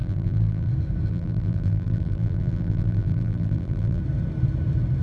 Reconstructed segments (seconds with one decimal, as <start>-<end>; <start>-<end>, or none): 0.0-0.7; 1.1-4.0